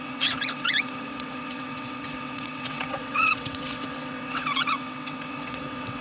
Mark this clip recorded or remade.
remade